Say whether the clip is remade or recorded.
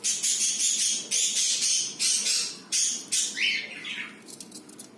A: recorded